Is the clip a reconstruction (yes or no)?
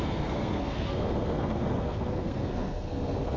yes